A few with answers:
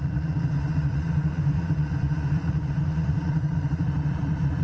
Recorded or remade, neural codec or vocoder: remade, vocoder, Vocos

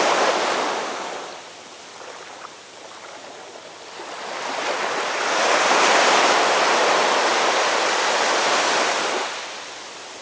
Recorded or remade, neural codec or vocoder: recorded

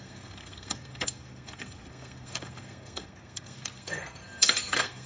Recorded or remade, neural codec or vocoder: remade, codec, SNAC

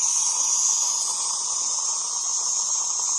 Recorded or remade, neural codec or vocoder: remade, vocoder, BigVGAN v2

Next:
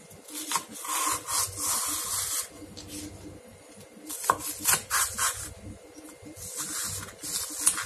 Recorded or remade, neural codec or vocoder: recorded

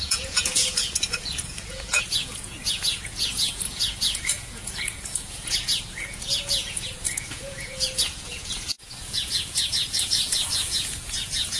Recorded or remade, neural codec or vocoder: remade, vocoder, Vocos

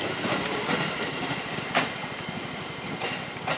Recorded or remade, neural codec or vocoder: recorded